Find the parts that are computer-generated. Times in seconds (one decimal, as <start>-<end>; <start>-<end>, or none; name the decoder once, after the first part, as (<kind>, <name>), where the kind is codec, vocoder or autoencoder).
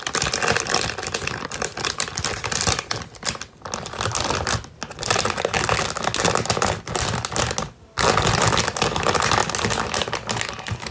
none